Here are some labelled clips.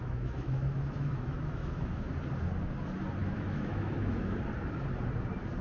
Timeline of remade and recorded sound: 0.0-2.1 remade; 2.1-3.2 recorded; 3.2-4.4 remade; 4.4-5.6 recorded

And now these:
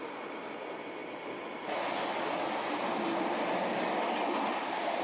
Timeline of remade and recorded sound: 0.0-5.0 recorded

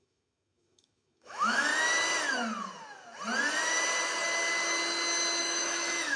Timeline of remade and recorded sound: 0.0-1.7 remade; 1.7-5.4 recorded; 5.4-6.2 remade

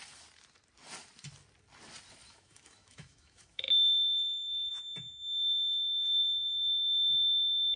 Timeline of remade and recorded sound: 0.0-2.3 recorded; 2.3-4.7 remade; 4.7-7.8 recorded

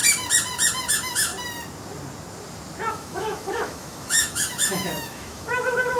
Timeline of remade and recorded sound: 0.0-0.9 recorded; 0.9-1.3 remade; 1.3-2.9 recorded; 2.9-6.0 remade